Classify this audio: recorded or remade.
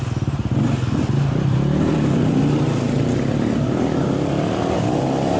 recorded